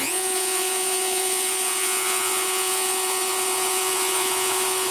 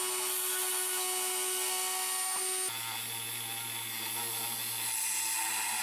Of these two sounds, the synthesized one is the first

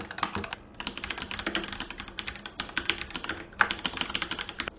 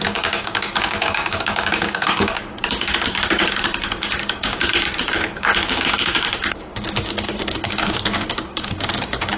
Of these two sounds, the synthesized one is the second